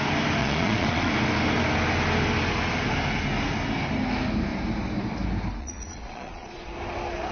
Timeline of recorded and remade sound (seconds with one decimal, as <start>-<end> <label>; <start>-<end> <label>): 0.0-0.4 recorded; 0.4-1.1 remade; 1.1-5.6 recorded; 5.6-6.7 remade; 6.7-7.3 recorded